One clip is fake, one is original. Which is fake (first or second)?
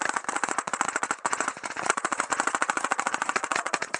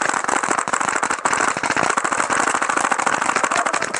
first